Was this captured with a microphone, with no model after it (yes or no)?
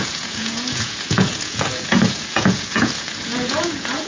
no